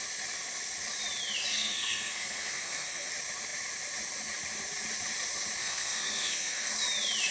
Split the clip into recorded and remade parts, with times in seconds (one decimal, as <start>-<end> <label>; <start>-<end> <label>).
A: 0.0-1.5 recorded; 1.5-3.1 remade; 3.1-5.6 recorded; 5.6-6.7 remade; 6.7-7.3 recorded